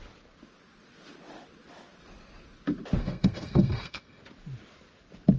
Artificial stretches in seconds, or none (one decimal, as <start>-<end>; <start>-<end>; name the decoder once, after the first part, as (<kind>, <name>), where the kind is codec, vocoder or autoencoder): 3.0-4.2 (codec, SNAC)